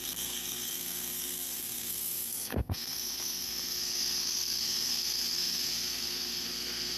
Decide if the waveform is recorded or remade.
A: remade